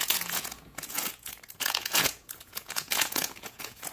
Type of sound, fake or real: fake